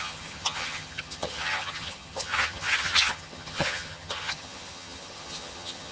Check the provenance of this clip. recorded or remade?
remade